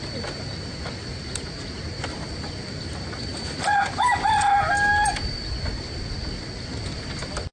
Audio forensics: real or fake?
real